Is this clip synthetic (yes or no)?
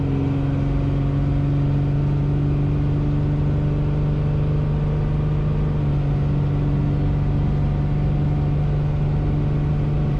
no